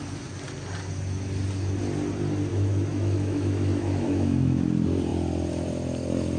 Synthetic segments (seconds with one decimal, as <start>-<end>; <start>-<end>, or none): 2.5-4.6

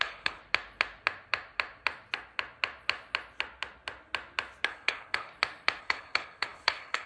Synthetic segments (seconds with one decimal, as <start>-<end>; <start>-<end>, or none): 0.0-0.4; 4.7-5.3; 5.8-7.1

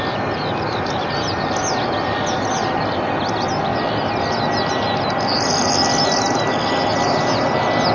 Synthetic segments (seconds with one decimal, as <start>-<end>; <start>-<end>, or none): none